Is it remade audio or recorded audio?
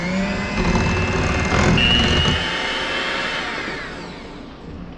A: recorded